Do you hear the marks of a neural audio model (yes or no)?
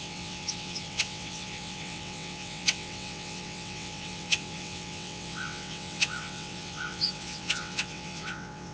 yes